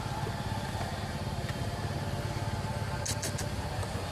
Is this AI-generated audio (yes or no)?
no